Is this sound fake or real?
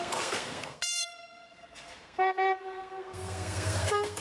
fake